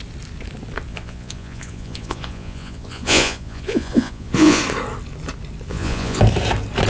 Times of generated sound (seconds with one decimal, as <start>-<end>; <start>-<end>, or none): 0.9-4.6; 5.7-6.2